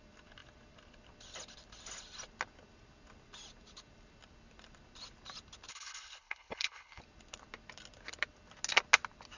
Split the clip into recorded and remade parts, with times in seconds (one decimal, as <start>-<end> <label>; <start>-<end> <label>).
0.0-5.7 recorded; 5.7-7.0 remade; 7.0-9.4 recorded